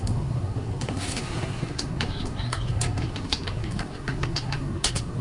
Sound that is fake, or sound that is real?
fake